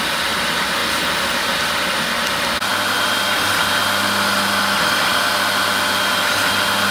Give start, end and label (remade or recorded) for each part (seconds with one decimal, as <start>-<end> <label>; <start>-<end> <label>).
0.0-0.8 remade; 0.8-2.3 recorded; 2.3-2.7 remade; 2.7-6.9 recorded